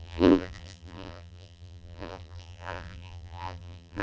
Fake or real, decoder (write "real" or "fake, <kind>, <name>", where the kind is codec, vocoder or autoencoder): fake, vocoder, BigVGAN v2